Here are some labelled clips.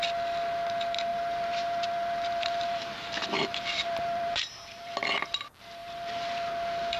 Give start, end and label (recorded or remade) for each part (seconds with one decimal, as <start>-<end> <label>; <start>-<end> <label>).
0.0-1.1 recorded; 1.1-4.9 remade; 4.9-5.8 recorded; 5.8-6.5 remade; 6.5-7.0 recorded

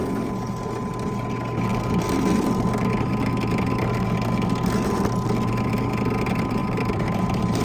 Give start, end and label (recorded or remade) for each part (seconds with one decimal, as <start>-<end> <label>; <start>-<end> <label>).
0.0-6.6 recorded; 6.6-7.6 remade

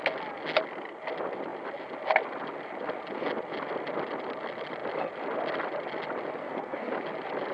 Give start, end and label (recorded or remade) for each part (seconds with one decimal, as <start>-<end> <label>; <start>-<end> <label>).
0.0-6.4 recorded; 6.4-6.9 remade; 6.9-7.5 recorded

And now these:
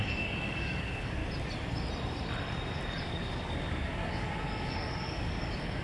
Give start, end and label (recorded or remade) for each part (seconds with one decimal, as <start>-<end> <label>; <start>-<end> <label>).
0.0-1.2 remade; 1.2-3.0 recorded; 3.0-5.8 remade

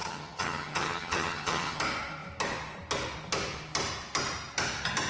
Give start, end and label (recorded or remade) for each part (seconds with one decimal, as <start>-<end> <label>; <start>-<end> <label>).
0.0-1.8 remade; 1.8-5.1 recorded